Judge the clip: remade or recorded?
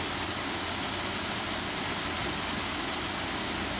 recorded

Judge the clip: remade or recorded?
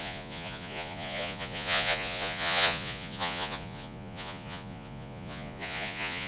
remade